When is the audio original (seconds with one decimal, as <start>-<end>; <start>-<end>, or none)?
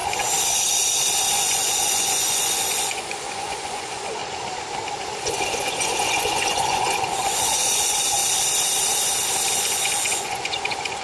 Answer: 0.0-1.3; 4.2-5.2; 8.2-9.5